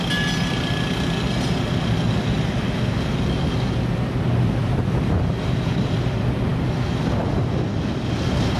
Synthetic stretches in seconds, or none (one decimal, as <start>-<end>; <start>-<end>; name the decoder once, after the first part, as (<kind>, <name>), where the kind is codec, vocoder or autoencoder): none